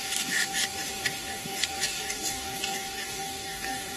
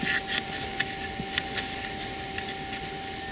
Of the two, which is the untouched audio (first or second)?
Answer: second